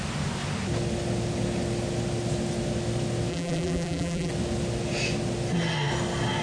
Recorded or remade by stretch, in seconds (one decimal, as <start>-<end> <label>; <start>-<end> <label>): 0.0-3.3 recorded; 3.3-4.3 remade; 4.3-6.4 recorded